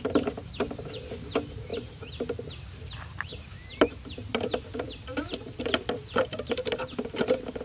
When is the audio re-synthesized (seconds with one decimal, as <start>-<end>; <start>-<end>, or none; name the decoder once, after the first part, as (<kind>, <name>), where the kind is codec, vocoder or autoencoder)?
3.3-7.6 (vocoder, BigVGAN v2)